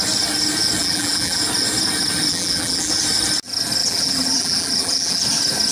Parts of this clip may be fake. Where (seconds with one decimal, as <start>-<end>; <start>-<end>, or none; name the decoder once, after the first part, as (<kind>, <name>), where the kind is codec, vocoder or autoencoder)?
0.8-1.4 (vocoder, BigVGAN v2); 2.3-2.9; 3.8-5.2